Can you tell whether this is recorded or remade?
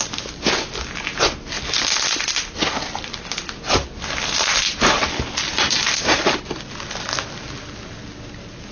recorded